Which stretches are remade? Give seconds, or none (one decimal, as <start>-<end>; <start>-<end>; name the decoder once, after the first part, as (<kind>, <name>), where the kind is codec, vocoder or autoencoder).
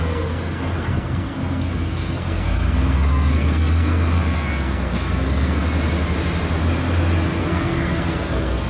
0.0-5.6 (codec, SNAC); 7.4-8.7